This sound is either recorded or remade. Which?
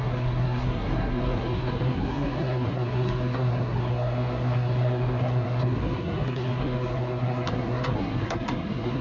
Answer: remade